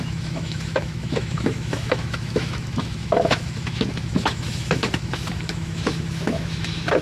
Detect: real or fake fake